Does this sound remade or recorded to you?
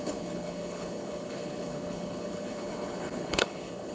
remade